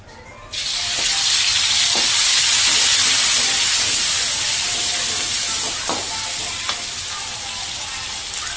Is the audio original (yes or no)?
yes